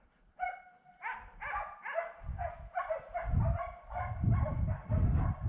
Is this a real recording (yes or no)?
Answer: yes